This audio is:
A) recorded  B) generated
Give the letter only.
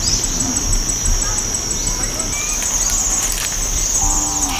A